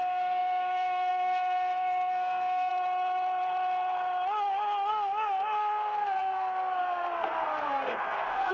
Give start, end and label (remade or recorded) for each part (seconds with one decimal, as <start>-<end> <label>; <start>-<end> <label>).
0.0-2.7 remade; 2.7-4.9 recorded; 4.9-8.5 remade